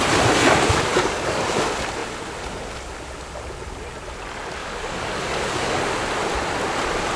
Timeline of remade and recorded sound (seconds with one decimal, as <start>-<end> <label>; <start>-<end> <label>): 0.0-0.9 recorded; 0.9-1.6 remade; 1.6-4.6 recorded; 4.6-5.8 remade; 5.8-7.2 recorded